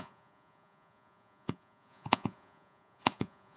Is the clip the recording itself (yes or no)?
no